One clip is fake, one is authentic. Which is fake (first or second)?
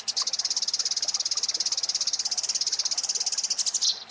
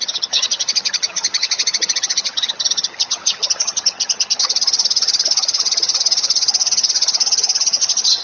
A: second